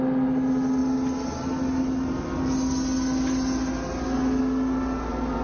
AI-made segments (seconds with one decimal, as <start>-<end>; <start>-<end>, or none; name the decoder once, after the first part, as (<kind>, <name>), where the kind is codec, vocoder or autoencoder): none